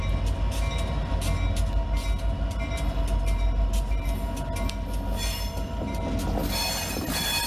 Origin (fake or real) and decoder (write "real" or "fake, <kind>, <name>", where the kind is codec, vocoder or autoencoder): real